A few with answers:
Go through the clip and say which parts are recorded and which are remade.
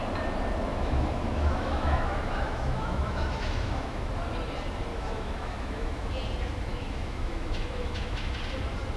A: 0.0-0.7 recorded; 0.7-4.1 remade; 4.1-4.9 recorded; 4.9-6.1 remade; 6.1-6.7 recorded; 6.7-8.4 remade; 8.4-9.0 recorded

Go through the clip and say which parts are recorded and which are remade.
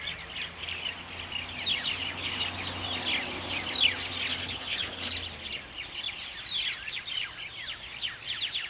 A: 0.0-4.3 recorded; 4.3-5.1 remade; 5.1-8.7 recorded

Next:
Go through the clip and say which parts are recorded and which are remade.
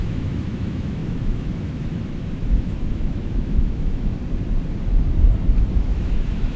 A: 0.0-4.2 remade; 4.2-5.7 recorded; 5.7-6.6 remade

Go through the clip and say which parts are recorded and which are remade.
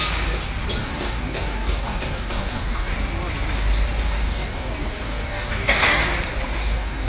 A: 0.0-0.8 recorded; 0.8-2.9 remade; 2.9-4.0 recorded; 4.0-6.0 remade; 6.0-6.6 recorded; 6.6-7.1 remade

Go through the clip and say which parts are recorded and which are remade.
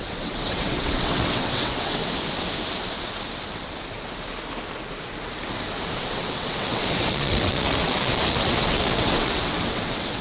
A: 0.0-2.0 remade; 2.0-6.0 recorded; 6.0-10.2 remade